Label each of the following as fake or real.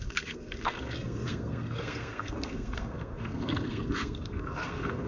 fake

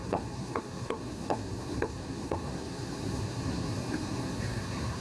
fake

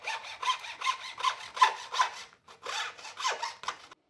real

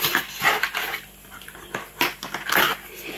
real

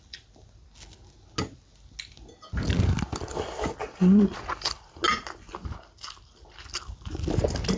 real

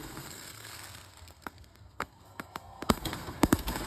fake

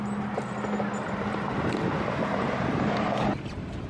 real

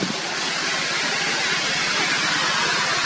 real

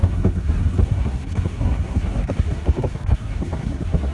fake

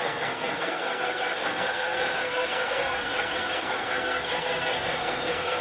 fake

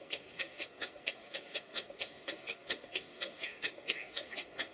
fake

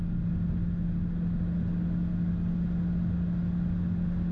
real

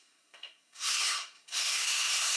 fake